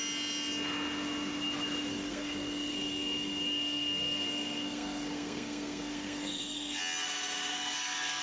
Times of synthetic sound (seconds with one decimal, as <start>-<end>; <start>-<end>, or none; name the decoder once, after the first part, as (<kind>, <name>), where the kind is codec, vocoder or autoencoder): 1.9-6.8 (codec, SNAC); 7.5-8.2